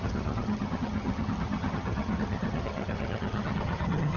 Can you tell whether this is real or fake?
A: fake